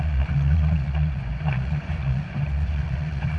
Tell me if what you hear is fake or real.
fake